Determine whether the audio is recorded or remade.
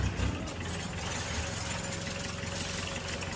recorded